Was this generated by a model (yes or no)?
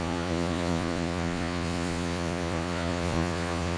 yes